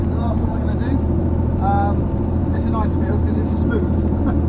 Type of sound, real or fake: fake